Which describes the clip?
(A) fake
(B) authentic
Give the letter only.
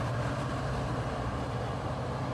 B